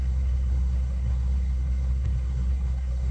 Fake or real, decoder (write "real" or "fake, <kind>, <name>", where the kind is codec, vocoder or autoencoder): fake, codec, SNAC